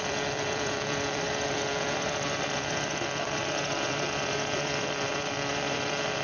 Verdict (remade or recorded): remade